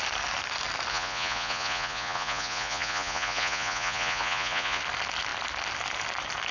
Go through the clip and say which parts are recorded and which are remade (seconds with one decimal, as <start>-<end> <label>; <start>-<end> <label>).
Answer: 0.0-0.9 recorded; 0.9-4.8 remade; 4.8-6.5 recorded